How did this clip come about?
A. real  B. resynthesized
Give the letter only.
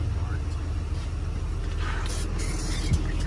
A